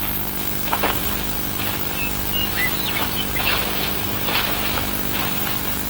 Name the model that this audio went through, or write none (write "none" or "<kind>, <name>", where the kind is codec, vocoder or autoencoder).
autoencoder, DAC-VAE